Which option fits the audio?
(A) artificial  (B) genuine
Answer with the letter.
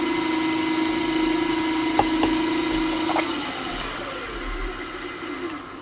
B